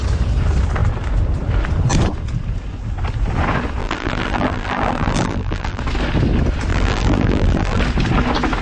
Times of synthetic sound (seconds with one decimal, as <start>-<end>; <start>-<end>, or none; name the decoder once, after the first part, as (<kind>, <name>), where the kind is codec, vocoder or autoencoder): 3.8-5.8 (vocoder, BigVGAN v2); 6.7-7.8